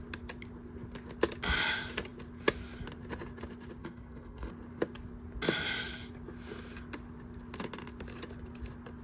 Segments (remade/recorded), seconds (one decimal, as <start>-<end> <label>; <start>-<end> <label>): 0.0-3.8 recorded; 3.8-4.5 remade; 4.5-9.0 recorded